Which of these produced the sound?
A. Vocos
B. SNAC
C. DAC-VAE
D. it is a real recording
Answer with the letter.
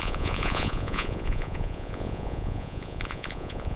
A